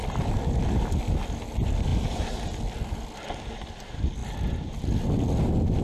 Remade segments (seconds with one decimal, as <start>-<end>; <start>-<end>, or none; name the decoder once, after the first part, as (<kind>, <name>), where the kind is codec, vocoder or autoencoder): 0.0-0.9 (vocoder, BigVGAN v2); 4.2-4.8